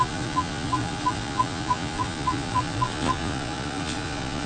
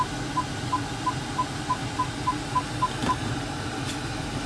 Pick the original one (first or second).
second